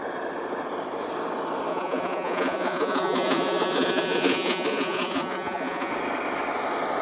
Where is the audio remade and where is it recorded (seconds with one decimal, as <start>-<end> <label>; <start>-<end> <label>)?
0.0-1.7 recorded; 1.7-5.9 remade; 5.9-7.0 recorded